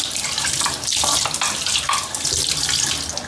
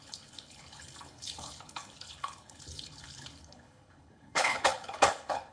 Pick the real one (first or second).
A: first